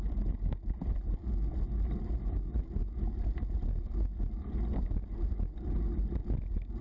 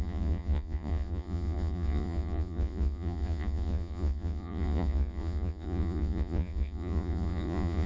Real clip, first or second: first